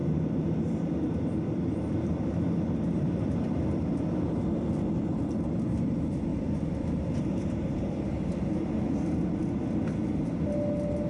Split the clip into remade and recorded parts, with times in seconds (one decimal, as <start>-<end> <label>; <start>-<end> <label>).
0.0-3.2 remade; 3.2-6.3 recorded; 6.3-8.7 remade; 8.7-11.1 recorded